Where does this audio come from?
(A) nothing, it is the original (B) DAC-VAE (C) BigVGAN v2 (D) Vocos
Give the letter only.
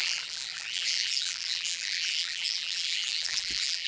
C